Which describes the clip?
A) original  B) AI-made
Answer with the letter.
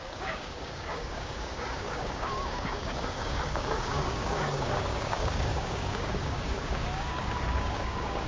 B